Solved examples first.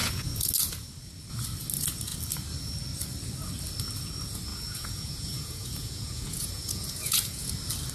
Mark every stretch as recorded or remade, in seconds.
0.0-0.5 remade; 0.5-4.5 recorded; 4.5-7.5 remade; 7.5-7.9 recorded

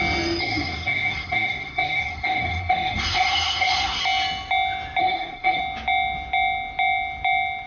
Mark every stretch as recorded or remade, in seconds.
0.0-0.4 recorded; 0.4-4.0 remade; 4.0-5.0 recorded; 5.0-5.6 remade; 5.6-7.7 recorded

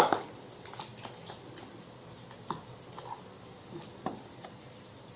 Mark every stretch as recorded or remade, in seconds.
0.0-5.2 recorded

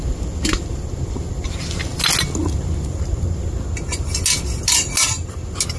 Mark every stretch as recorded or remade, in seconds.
0.0-5.8 recorded